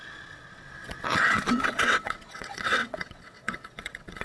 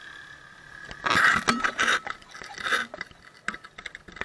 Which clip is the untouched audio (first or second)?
second